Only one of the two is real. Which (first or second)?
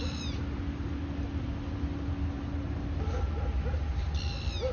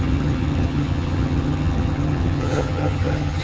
first